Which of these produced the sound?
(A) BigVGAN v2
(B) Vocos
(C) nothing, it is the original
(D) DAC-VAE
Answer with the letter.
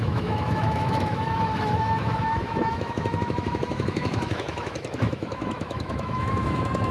D